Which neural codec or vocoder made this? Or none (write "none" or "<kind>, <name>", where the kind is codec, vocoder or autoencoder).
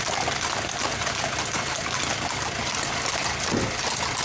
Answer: none